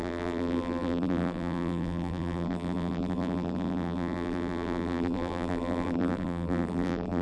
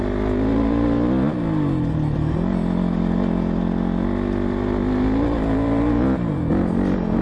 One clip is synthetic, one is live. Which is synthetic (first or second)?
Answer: first